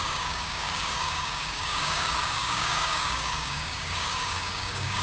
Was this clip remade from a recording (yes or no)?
yes